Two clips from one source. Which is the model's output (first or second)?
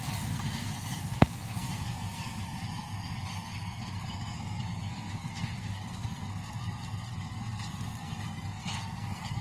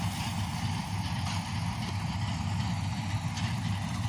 first